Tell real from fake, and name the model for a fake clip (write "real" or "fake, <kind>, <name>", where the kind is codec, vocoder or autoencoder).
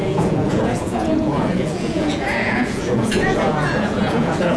fake, vocoder, Vocos